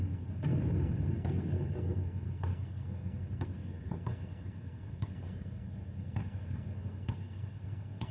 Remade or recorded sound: remade